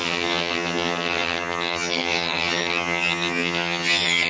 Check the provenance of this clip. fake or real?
fake